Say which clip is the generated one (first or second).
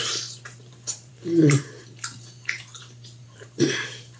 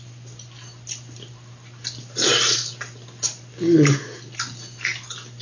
first